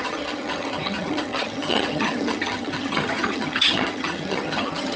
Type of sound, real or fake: fake